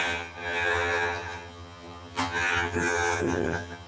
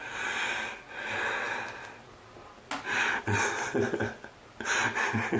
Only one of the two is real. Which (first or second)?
second